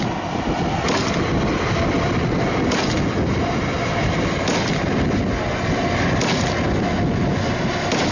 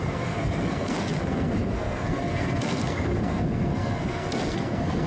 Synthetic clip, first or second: second